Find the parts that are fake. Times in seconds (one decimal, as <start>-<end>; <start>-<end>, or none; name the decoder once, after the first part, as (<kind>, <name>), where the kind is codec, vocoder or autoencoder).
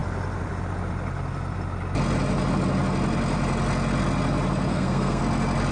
4.7-5.2 (codec, SNAC)